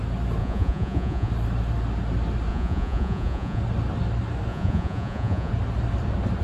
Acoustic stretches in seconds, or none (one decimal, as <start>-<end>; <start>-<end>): 0.0-0.4; 1.3-2.5; 3.6-4.5; 5.5-6.4